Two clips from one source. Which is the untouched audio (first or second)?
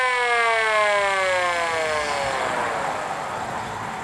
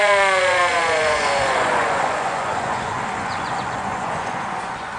first